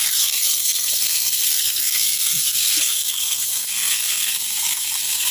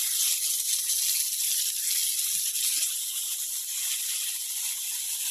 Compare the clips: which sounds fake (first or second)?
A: first